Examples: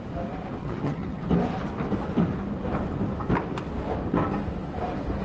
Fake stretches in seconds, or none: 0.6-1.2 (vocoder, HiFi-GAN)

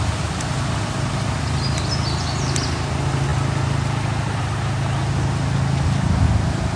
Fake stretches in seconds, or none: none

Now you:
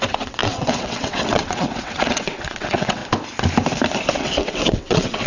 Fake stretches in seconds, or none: 0.0-3.0 (vocoder, WaveNeXt); 4.1-5.3

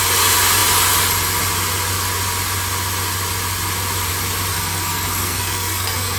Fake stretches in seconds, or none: 4.5-6.2 (codec, SNAC)

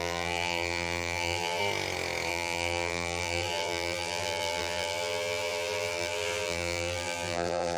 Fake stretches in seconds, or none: 0.0-1.6 (vocoder, BigVGAN v2); 2.3-7.8

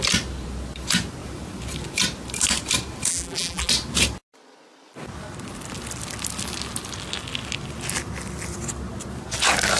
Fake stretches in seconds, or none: 3.1-3.7 (vocoder, BigVGAN v2)

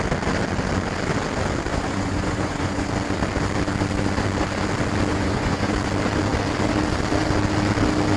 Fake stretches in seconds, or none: 1.7-2.9 (vocoder, Vocos); 5.1-5.7

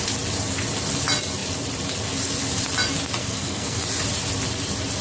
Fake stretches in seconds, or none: 3.2-3.8 (codec, SNAC)